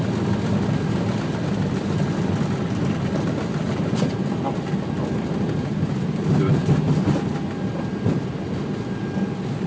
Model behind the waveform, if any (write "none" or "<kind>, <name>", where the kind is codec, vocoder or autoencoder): none